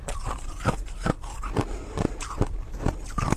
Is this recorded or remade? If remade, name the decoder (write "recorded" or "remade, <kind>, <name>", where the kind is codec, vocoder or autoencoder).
remade, vocoder, BigVGAN v2